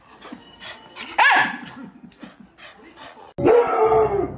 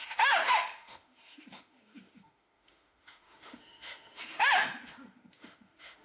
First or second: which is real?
first